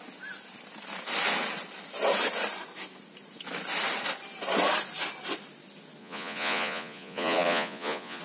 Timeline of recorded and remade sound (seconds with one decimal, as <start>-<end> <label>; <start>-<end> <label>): 0.0-6.0 recorded; 6.0-8.2 remade